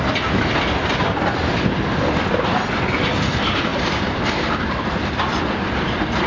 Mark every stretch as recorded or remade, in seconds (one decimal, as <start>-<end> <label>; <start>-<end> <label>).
0.0-3.7 recorded; 3.7-5.4 remade; 5.4-6.3 recorded